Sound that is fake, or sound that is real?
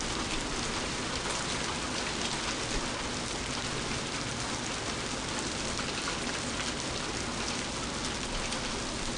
real